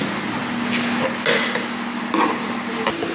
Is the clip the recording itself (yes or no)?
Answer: yes